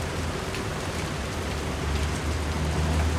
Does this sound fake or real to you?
real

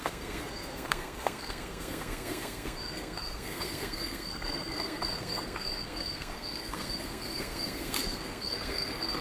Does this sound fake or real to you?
fake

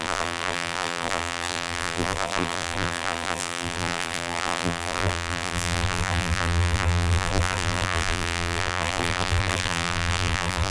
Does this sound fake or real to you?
fake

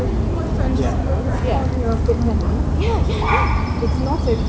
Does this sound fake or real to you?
real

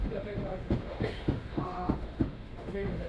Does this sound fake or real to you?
fake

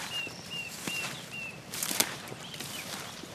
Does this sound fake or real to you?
fake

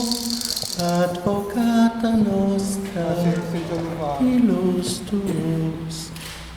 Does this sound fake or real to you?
real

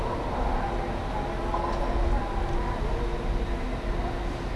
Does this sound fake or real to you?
real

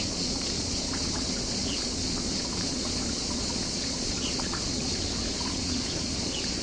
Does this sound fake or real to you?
fake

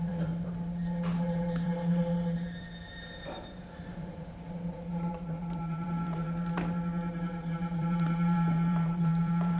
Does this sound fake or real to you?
fake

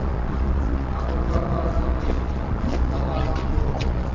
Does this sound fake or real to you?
fake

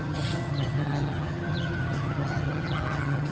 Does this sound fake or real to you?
fake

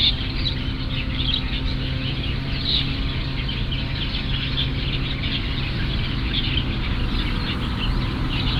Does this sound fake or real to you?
real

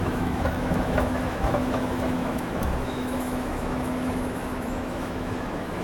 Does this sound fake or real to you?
fake